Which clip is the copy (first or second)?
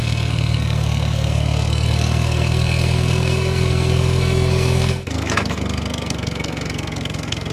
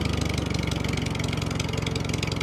first